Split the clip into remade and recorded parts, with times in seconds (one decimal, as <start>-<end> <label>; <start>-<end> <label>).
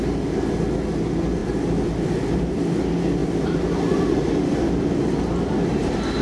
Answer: 0.0-1.4 recorded; 1.4-2.5 remade; 2.5-3.2 recorded; 3.2-5.8 remade; 5.8-6.2 recorded